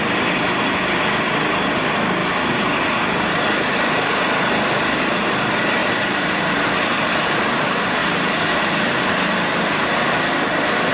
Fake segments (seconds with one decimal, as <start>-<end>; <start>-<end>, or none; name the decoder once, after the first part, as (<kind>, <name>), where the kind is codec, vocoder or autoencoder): 2.2-4.1 (vocoder, BigVGAN v2); 5.8-7.1; 8.0-9.1